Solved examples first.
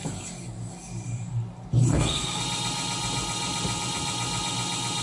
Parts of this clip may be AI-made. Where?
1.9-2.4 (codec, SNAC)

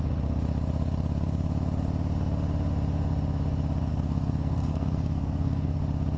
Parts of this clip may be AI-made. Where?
3.9-5.8 (codec, SNAC)

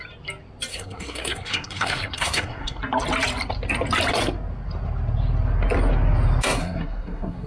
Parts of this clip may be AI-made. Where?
0.7-2.8 (codec, SNAC); 6.6-7.5

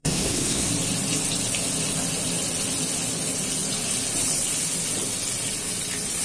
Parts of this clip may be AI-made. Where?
0.0-0.7 (codec, SNAC)